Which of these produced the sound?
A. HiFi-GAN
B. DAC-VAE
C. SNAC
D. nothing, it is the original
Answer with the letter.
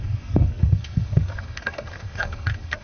C